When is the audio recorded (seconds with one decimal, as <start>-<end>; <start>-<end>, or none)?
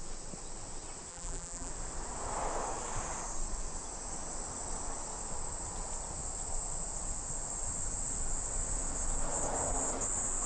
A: 0.0-1.1; 1.7-10.5